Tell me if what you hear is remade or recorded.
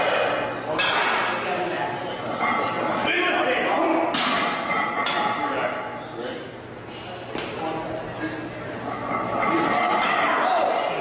recorded